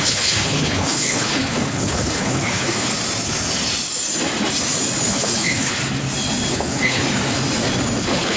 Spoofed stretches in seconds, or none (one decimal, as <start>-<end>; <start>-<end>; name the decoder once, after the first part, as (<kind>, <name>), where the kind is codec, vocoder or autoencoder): 0.0-2.9 (codec, HILCodec); 5.1-5.8; 6.5-7.0; 8.0-8.4